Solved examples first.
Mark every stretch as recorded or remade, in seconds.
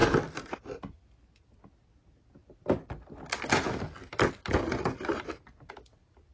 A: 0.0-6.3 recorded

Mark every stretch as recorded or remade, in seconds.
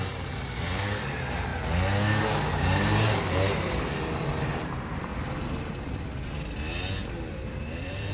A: 0.0-1.5 remade; 1.5-2.2 recorded; 2.2-5.1 remade; 5.1-7.3 recorded; 7.3-8.1 remade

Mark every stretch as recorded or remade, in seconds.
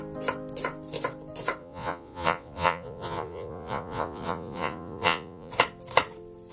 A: 0.0-1.6 recorded; 1.6-5.5 remade; 5.5-6.5 recorded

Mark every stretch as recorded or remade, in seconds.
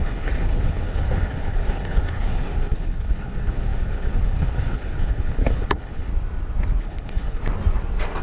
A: 0.0-6.1 remade; 6.1-6.8 recorded; 6.8-7.4 remade; 7.4-8.2 recorded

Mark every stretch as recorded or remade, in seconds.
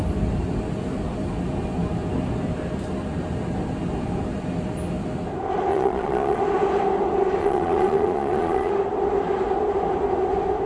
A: 0.0-5.7 recorded; 5.7-6.4 remade; 6.4-7.4 recorded; 7.4-8.7 remade; 8.7-10.7 recorded